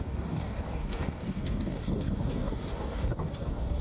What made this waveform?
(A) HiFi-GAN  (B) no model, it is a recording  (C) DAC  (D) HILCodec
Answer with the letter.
C